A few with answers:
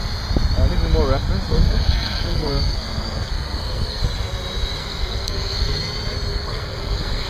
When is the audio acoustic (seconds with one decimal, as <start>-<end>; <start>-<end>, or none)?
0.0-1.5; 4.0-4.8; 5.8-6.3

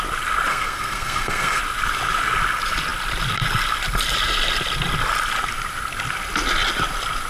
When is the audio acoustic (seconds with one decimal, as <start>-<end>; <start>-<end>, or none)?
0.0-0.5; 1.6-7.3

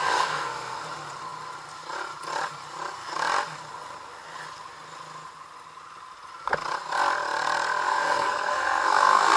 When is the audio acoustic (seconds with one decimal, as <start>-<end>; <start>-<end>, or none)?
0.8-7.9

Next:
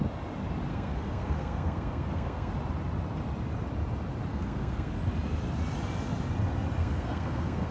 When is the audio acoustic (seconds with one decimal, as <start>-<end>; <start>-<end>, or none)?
0.0-0.7; 2.5-4.3; 4.9-6.8

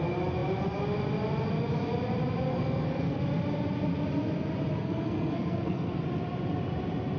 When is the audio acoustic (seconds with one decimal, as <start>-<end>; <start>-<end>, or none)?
0.0-2.5; 3.2-4.8; 6.0-7.2